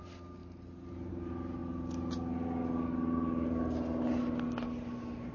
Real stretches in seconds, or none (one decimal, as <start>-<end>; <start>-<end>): 0.0-5.3